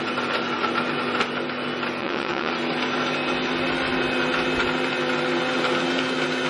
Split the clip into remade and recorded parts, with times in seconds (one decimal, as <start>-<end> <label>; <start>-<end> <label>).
0.0-2.0 recorded; 2.0-2.5 remade; 2.5-6.5 recorded